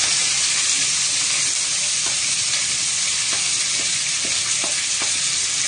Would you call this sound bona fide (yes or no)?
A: yes